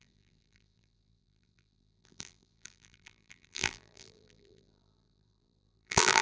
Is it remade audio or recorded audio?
remade